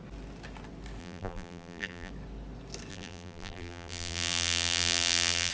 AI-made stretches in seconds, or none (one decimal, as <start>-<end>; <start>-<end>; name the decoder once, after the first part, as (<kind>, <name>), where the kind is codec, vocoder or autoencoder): 1.0-2.1 (vocoder, BigVGAN v2); 2.9-5.5